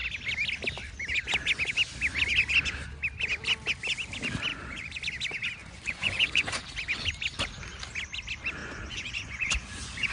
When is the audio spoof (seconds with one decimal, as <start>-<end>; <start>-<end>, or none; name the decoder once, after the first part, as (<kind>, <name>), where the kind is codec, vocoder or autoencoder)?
4.5-5.0 (vocoder, Vocos); 5.6-6.6; 8.6-10.1